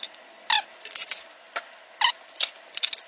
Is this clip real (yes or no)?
yes